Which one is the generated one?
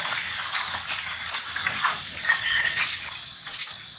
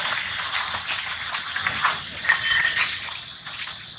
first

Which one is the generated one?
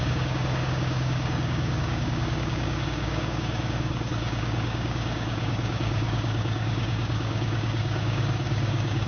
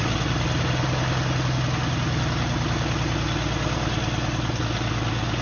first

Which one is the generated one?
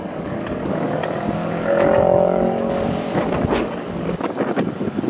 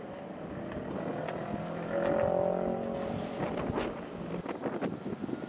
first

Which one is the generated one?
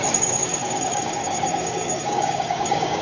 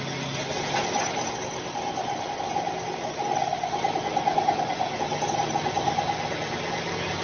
first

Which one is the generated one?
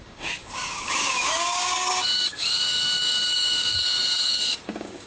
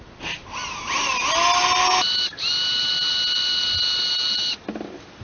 first